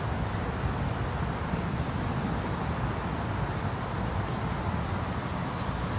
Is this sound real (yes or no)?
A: yes